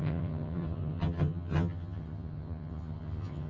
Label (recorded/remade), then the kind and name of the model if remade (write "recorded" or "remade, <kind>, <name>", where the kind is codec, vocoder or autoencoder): remade, vocoder, HiFi-GAN